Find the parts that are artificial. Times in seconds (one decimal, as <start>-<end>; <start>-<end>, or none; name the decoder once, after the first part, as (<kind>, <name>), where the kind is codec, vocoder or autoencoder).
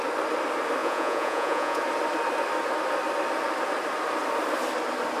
0.8-1.8 (vocoder, Vocos)